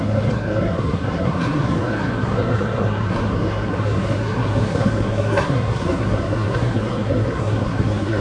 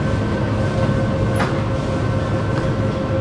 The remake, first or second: first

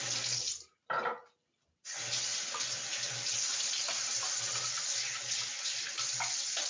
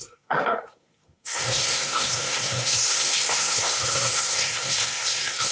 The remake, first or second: second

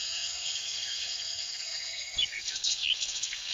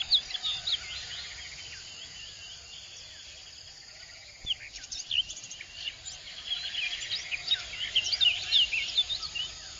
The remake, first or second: first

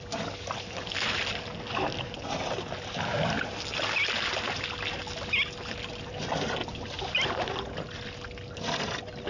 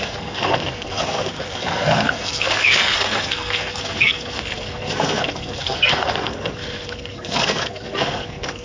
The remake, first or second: second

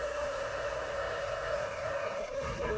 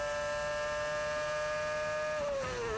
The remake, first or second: first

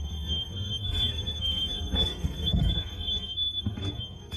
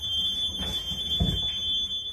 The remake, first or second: first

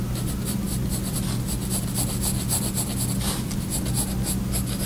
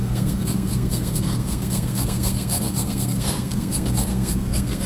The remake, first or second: second